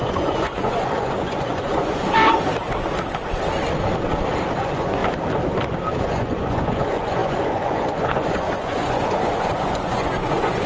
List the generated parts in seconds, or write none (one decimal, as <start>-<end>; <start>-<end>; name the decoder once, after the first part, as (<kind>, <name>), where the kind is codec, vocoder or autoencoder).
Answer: 0.0-2.2 (vocoder, Vocos); 4.6-5.0; 6.0-10.7

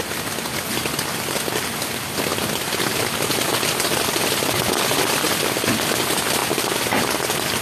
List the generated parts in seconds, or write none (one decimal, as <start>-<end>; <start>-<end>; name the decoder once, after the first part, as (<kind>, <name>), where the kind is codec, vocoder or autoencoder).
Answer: none

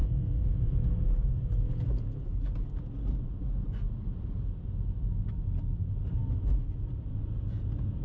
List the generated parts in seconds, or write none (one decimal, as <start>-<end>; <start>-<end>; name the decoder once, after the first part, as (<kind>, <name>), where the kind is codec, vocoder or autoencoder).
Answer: 0.0-2.3 (vocoder, Vocos); 7.1-8.0